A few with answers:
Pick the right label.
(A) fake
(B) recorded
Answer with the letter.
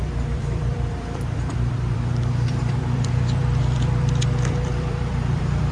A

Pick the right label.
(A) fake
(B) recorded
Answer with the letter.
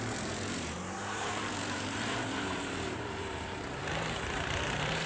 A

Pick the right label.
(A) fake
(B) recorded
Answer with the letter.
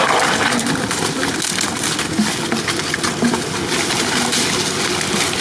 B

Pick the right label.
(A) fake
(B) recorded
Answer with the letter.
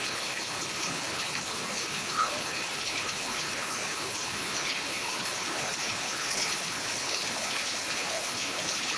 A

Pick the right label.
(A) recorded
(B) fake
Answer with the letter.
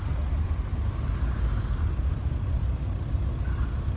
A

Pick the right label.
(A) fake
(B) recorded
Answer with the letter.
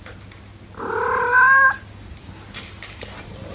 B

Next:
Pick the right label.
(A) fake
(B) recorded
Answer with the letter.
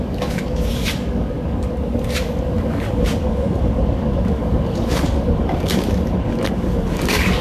A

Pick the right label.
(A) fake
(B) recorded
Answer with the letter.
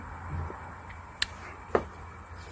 B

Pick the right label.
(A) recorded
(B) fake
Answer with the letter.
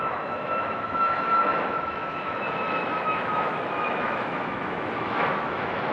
B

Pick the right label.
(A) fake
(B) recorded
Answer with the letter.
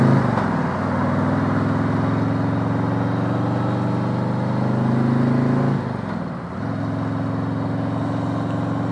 B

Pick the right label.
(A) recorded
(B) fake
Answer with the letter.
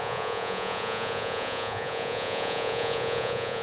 B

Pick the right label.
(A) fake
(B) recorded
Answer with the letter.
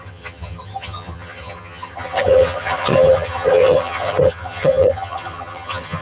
A